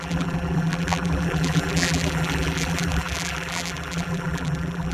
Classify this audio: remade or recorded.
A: remade